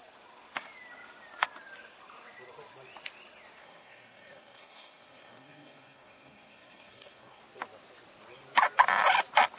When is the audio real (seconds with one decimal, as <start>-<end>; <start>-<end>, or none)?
0.0-3.6; 7.4-9.6